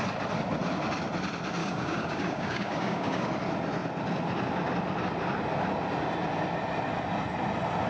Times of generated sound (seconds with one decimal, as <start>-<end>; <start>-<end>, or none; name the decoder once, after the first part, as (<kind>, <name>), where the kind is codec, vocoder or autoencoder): 1.6-3.3 (codec, DAC)